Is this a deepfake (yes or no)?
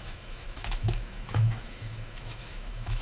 yes